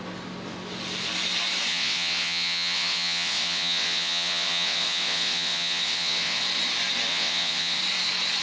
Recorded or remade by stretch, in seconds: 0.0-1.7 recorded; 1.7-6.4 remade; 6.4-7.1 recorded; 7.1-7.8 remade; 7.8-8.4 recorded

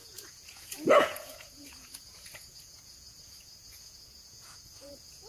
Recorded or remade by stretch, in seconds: 0.0-5.3 remade

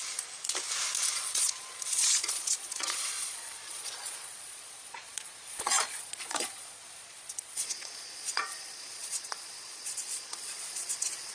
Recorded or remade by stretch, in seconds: 0.0-1.1 recorded; 1.1-11.3 remade

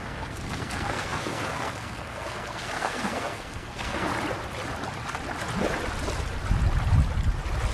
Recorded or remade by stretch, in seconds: 0.0-4.1 remade; 4.1-7.7 recorded

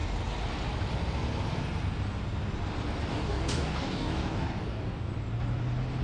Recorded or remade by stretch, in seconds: 0.0-3.1 recorded; 3.1-5.1 remade; 5.1-6.0 recorded

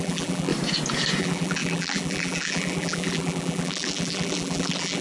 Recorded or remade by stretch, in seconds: 0.0-0.5 remade; 0.5-1.2 recorded; 1.2-5.0 remade

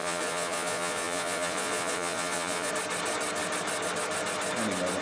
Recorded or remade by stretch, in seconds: 0.0-2.7 remade; 2.7-5.0 recorded

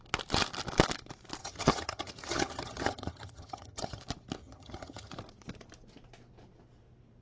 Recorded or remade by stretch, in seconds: 0.0-1.4 recorded; 1.4-4.0 remade; 4.0-4.4 recorded; 4.4-5.1 remade; 5.1-7.2 recorded